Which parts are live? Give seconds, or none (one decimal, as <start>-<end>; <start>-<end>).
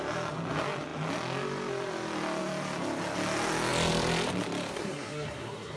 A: 0.0-4.7